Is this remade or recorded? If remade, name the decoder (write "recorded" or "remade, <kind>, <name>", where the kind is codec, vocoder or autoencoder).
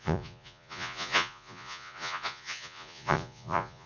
remade, vocoder, Vocos